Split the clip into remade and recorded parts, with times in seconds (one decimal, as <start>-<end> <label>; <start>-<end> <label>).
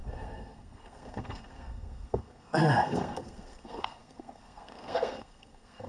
0.0-5.9 remade